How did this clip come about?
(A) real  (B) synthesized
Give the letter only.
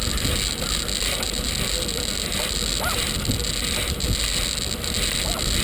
A